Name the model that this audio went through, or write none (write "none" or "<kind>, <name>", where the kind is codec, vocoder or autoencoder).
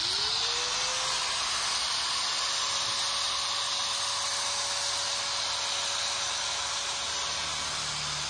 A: none